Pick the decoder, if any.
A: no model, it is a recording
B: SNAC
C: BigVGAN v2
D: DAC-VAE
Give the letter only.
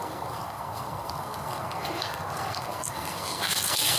B